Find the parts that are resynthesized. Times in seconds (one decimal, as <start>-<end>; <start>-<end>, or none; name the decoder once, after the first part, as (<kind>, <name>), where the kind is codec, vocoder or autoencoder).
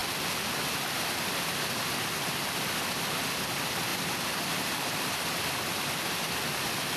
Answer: none